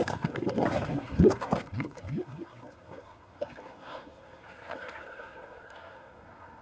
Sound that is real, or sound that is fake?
fake